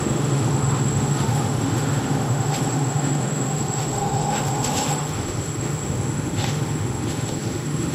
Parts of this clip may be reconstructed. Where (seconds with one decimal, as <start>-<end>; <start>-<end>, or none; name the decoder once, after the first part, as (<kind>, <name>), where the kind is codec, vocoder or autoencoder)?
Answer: 0.0-7.9 (autoencoder, DAC-VAE)